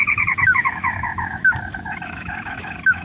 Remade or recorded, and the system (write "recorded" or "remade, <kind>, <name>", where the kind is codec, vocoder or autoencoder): remade, autoencoder, DAC-VAE